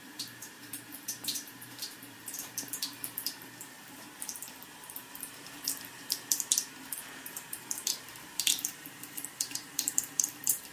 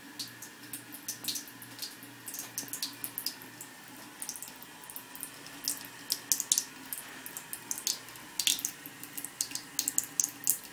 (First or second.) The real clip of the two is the second